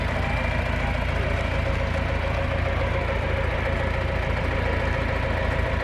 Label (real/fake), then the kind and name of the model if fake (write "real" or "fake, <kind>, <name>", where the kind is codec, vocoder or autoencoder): real